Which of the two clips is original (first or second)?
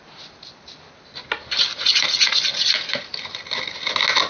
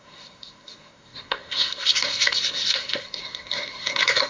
first